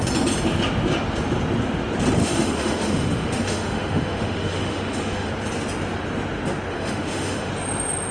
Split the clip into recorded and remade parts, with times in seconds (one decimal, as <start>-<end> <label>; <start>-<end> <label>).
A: 0.0-2.2 recorded; 2.2-5.3 remade; 5.3-6.7 recorded; 6.7-7.5 remade; 7.5-8.1 recorded